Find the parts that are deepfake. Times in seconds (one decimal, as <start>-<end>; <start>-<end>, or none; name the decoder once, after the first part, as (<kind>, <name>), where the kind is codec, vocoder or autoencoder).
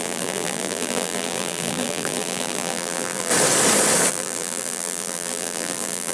0.0-3.3 (vocoder, BigVGAN v2); 4.1-6.1